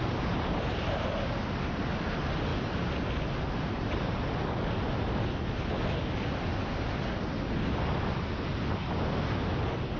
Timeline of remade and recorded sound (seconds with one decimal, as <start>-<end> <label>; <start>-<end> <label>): 0.0-10.0 recorded